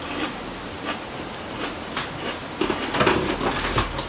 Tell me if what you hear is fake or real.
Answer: real